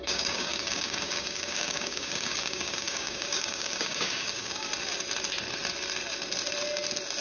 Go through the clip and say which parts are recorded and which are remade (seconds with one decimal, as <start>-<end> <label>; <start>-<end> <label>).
0.0-4.7 remade; 4.7-7.2 recorded